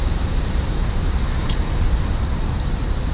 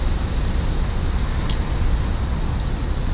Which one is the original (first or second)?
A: second